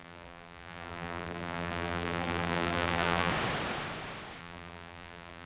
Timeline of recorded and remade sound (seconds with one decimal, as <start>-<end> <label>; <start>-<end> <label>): 0.0-3.3 remade; 3.3-4.4 recorded; 4.4-5.5 remade